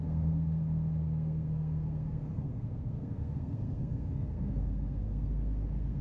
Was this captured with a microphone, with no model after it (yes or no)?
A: no